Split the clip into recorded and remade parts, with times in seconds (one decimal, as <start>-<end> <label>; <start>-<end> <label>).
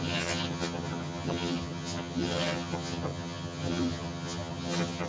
0.0-5.1 remade